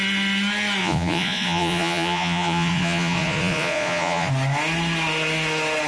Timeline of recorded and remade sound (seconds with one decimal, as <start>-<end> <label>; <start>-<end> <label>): 0.0-0.8 recorded; 0.8-4.3 remade; 4.3-5.9 recorded